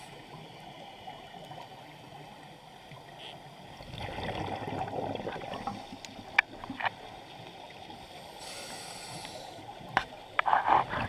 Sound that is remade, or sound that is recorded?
recorded